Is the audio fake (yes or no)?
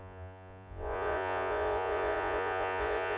yes